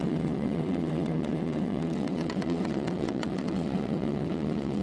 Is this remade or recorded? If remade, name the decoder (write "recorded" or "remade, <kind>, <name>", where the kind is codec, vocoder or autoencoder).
remade, vocoder, WaveNeXt